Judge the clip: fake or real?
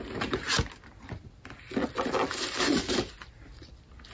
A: real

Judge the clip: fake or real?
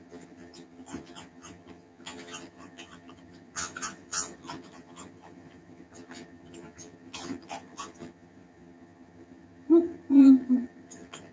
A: fake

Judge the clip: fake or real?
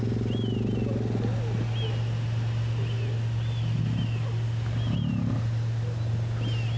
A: real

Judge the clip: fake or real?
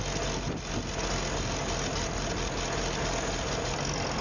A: real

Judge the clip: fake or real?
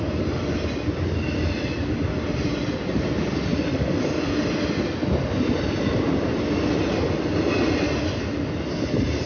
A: real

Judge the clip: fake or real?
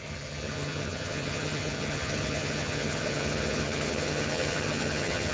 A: fake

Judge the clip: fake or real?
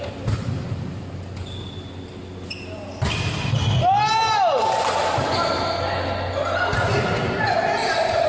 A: real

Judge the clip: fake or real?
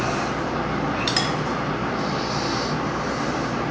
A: real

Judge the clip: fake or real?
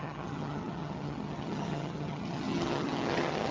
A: fake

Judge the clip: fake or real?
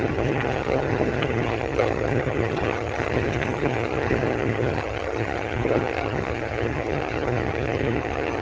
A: fake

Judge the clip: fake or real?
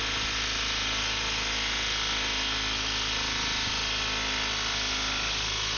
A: real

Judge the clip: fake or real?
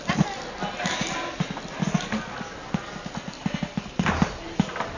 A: real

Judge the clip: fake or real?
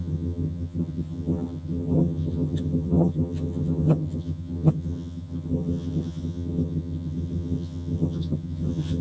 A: fake